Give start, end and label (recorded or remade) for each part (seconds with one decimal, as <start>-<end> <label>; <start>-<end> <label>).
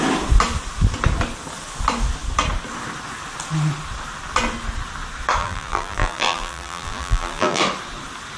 0.0-5.4 recorded; 5.4-7.6 remade; 7.6-8.4 recorded